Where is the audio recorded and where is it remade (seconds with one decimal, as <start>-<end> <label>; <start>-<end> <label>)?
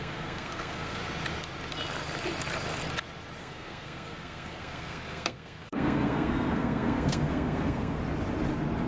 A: 0.0-1.0 remade; 1.0-3.4 recorded; 3.4-8.0 remade; 8.0-8.9 recorded